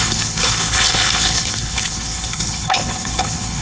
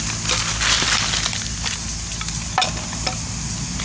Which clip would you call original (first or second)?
second